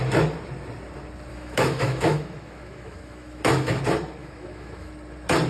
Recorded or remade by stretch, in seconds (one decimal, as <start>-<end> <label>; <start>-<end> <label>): 0.0-1.3 recorded; 1.3-3.8 remade; 3.8-4.2 recorded; 4.2-4.9 remade; 4.9-5.5 recorded